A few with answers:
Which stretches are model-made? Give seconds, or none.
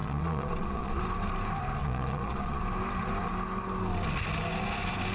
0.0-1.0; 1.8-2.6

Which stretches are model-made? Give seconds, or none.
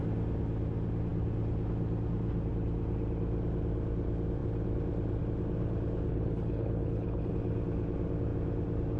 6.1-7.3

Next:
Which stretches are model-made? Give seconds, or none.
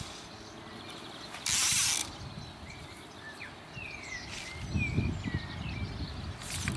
none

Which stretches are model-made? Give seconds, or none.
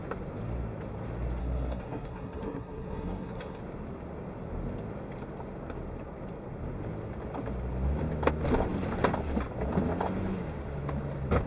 1.4-3.6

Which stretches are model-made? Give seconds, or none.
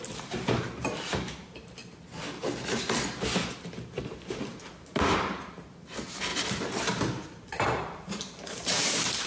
0.0-1.8; 3.6-6.3; 7.0-9.3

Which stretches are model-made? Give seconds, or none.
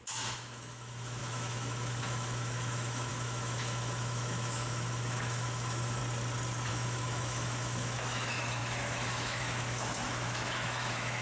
0.0-6.0; 6.7-11.2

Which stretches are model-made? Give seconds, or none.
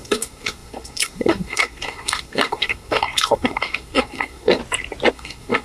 0.0-4.6; 5.1-5.6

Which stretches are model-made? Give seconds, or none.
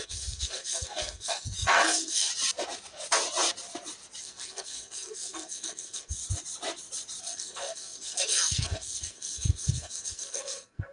0.0-2.3; 4.2-6.2; 7.2-10.9